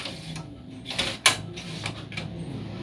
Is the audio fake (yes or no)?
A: no